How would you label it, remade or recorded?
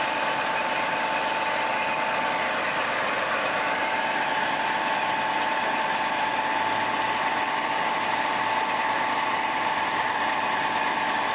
remade